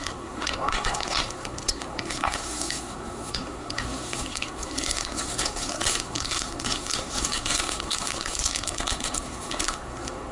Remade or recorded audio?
remade